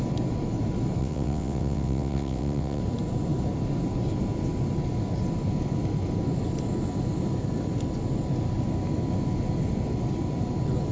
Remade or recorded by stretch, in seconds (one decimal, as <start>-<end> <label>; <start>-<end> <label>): 0.0-1.0 recorded; 1.0-2.8 remade; 2.8-10.9 recorded